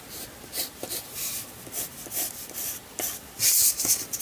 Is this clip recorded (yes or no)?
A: yes